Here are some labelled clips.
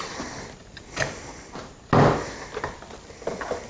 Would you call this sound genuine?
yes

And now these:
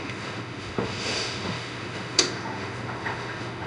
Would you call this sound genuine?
no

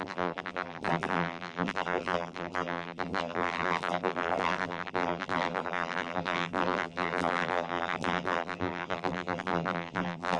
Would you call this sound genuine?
no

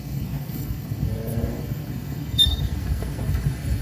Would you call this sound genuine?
no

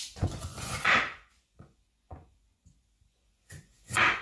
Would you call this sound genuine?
no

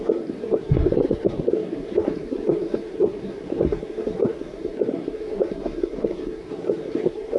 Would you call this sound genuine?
no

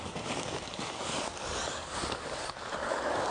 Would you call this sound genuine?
no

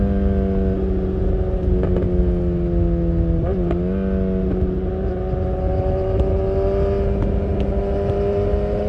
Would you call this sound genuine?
yes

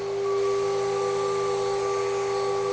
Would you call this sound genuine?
yes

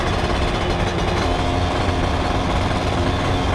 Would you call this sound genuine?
yes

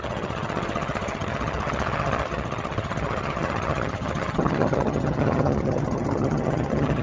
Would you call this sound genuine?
no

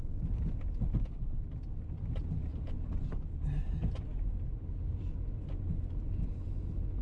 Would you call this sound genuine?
yes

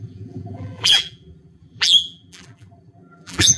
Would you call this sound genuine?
no